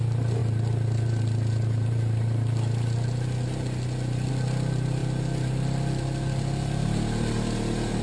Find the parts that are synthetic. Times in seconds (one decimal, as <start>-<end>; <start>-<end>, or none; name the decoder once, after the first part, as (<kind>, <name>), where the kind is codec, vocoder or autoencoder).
none